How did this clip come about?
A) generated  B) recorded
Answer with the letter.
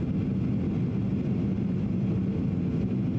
B